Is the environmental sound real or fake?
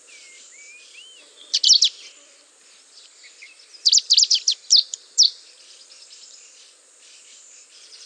real